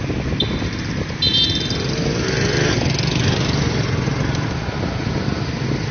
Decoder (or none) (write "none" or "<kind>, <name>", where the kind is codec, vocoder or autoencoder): none